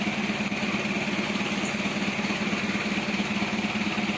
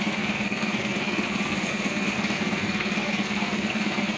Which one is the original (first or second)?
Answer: first